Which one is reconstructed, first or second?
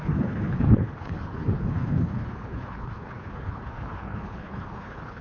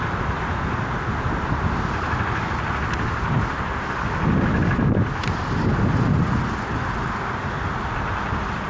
first